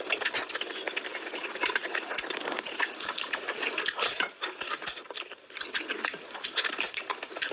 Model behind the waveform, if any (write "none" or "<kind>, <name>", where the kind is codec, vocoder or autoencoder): none